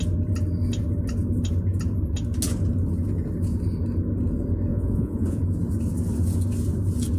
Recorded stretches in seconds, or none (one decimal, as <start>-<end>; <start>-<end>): 0.0-4.7; 5.4-7.2